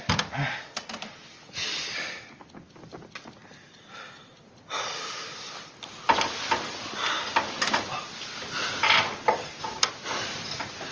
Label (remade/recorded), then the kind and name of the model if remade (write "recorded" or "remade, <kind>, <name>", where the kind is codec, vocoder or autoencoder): recorded